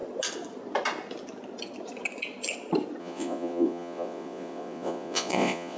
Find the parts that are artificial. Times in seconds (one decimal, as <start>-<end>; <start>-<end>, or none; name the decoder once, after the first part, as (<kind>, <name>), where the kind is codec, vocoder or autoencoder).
3.0-5.8 (vocoder, Vocos)